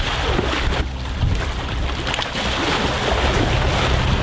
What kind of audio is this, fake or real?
real